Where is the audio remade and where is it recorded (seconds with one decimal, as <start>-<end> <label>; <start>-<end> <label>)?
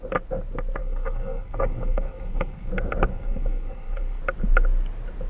0.0-0.8 recorded; 0.8-2.7 remade; 2.7-3.1 recorded; 3.1-4.2 remade; 4.2-5.3 recorded